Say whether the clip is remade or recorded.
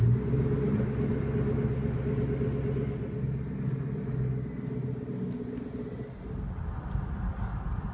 recorded